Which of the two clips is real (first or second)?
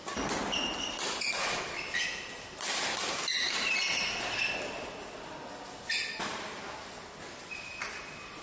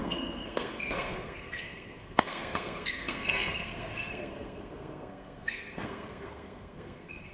first